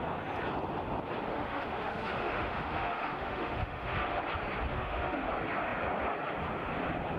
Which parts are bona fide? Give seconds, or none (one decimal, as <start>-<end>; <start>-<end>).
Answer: 0.0-1.3; 4.2-4.7; 5.3-7.2